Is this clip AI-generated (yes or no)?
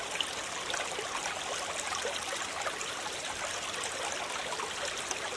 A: no